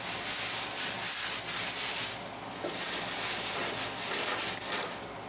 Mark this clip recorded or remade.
recorded